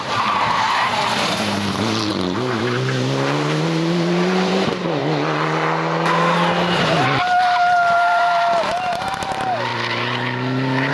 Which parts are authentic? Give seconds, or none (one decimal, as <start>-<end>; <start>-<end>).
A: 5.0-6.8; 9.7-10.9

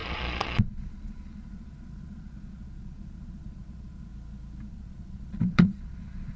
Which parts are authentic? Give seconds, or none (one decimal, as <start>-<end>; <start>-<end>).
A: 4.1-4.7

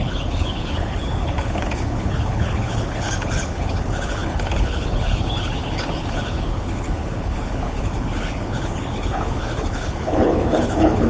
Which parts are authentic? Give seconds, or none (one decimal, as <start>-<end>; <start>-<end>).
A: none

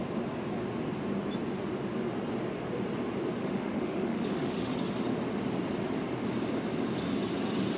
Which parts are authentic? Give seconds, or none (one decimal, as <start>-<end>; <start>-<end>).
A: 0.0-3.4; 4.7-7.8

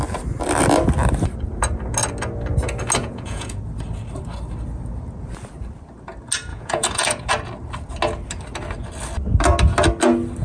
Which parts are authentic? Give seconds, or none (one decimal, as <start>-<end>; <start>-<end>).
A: 0.0-3.0; 3.6-6.5; 7.3-10.4

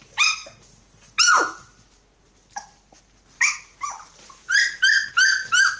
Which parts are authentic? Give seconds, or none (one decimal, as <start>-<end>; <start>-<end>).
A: 0.0-5.8

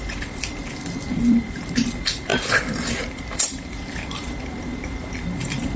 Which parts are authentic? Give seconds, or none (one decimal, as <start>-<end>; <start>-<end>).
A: 0.6-1.1